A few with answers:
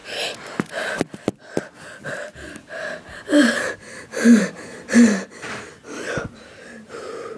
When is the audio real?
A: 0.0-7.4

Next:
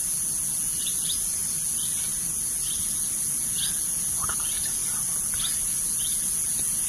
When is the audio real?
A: 0.0-6.9